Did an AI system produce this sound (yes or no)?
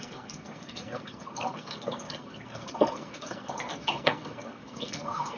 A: yes